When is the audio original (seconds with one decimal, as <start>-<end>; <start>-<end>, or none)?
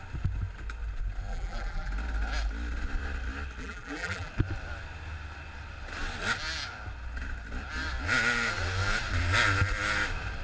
0.0-1.3; 1.9-3.6; 4.3-10.4